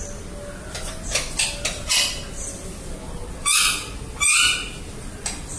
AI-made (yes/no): no